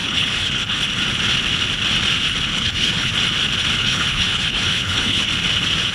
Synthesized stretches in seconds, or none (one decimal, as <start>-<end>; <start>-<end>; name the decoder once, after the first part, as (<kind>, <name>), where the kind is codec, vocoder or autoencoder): 0.0-0.8 (codec, HILCodec); 2.5-3.1; 3.8-5.3